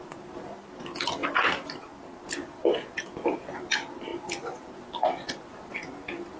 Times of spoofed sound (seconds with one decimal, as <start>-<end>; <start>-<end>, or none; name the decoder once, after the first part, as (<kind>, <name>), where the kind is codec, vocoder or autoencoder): none